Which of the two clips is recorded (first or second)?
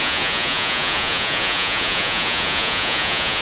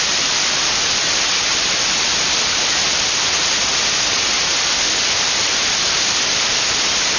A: second